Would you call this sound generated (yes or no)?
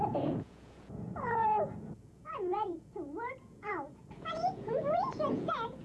yes